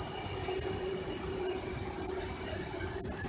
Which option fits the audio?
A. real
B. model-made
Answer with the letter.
B